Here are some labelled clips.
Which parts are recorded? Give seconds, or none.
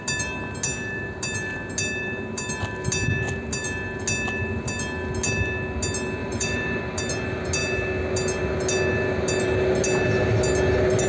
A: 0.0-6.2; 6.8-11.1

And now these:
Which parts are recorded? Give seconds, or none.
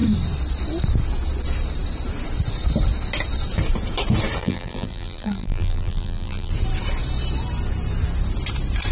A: 0.0-4.4; 6.5-8.9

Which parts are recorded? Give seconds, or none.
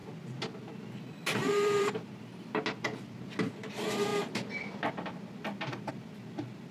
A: 0.0-1.4; 2.6-6.7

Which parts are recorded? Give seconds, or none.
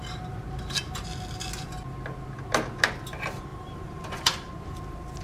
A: 0.0-3.5; 4.5-5.2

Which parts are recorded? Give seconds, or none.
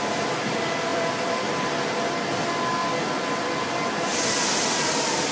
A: 0.0-0.9; 1.7-2.8; 3.4-4.1